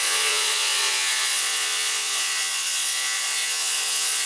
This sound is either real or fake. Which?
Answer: fake